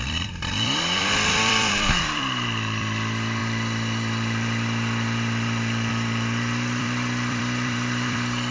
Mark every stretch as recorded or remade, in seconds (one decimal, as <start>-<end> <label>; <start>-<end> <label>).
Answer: 0.0-8.5 remade